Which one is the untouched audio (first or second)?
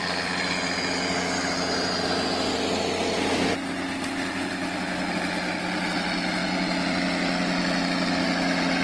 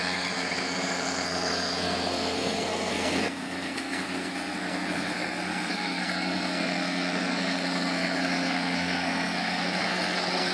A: first